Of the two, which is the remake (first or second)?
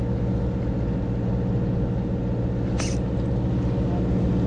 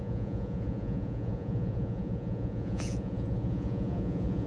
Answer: second